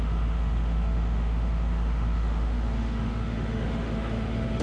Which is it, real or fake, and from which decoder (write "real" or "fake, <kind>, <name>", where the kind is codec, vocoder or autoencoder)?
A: fake, autoencoder, DAC-VAE